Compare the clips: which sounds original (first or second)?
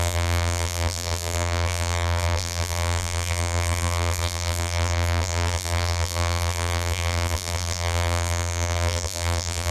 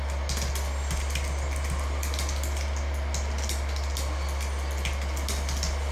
second